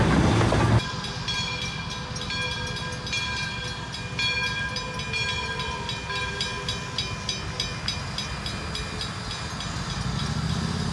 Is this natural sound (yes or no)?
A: yes